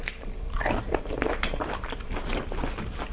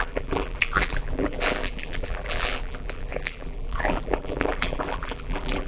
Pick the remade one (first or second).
second